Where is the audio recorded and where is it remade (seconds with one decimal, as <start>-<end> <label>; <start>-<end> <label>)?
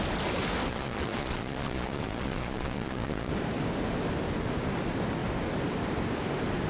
0.0-0.7 recorded; 0.7-3.3 remade; 3.3-6.7 recorded